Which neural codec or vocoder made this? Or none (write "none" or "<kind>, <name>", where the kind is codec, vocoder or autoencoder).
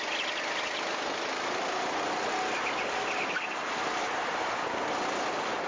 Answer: none